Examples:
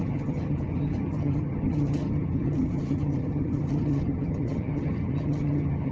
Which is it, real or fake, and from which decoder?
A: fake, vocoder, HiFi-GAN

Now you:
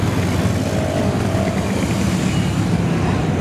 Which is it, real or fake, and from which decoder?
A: real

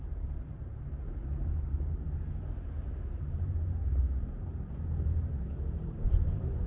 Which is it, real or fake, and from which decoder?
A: fake, vocoder, BigVGAN v2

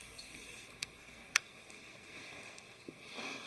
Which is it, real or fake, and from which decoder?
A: fake, codec, SNAC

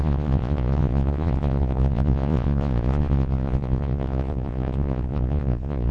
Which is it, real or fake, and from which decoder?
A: fake, vocoder, Vocos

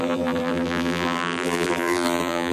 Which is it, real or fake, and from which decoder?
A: fake, vocoder, BigVGAN v2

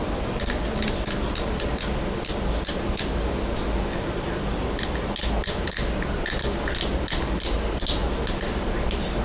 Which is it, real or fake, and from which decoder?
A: real